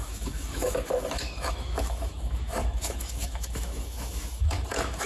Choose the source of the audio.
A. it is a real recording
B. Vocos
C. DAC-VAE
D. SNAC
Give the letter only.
C